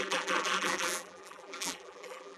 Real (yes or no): no